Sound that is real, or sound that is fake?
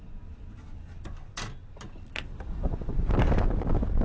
real